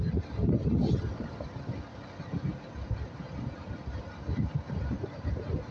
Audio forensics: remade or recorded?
recorded